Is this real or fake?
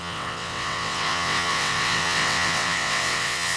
fake